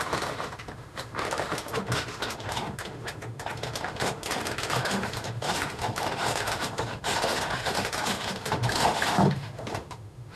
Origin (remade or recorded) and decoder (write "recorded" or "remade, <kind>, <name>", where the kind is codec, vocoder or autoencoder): remade, autoencoder, DAC-VAE